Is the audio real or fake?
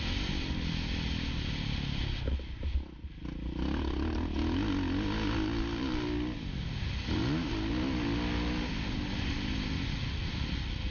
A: real